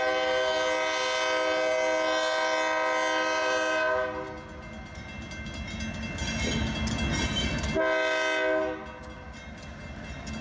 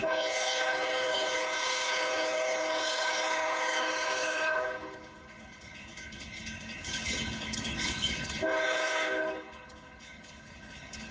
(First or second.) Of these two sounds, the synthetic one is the second